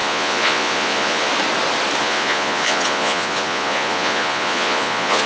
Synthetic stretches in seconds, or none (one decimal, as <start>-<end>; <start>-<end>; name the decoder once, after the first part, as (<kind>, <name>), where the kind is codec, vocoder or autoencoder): 0.0-1.3 (vocoder, Vocos); 2.0-5.3